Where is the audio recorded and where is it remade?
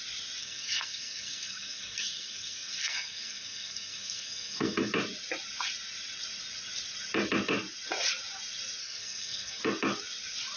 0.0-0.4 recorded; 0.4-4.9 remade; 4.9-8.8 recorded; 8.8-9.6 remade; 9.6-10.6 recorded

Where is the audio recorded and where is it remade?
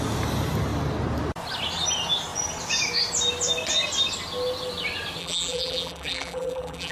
0.0-5.2 recorded; 5.2-6.9 remade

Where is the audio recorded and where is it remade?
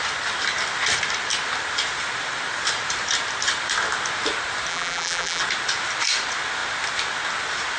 0.0-4.7 recorded; 4.7-5.4 remade; 5.4-7.8 recorded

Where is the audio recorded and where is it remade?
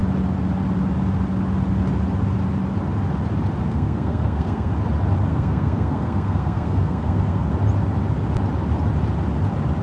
0.0-3.6 recorded; 3.6-4.7 remade; 4.7-5.3 recorded; 5.3-7.5 remade; 7.5-9.8 recorded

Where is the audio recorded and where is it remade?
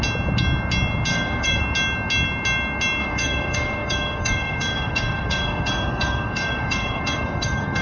0.0-1.1 recorded; 1.1-1.6 remade; 1.6-3.0 recorded; 3.0-7.8 remade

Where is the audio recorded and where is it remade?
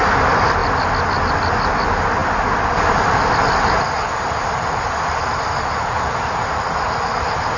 0.0-7.6 recorded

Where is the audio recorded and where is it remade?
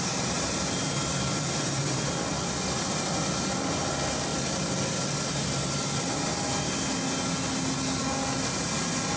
0.0-9.2 recorded